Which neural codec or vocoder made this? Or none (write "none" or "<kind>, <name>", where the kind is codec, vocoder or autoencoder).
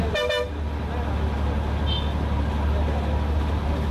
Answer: none